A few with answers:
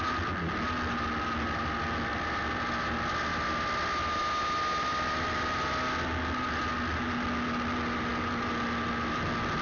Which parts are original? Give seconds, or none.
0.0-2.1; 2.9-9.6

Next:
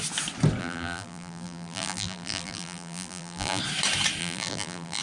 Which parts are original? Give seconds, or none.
0.0-0.6; 3.6-4.2

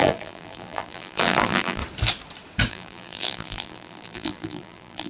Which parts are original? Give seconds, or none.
1.8-2.7

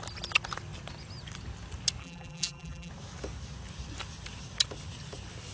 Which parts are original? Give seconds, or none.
0.0-2.0; 2.9-5.5

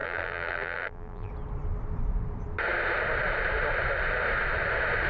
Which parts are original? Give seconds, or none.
1.3-5.1